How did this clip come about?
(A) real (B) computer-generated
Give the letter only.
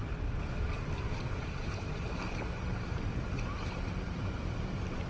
B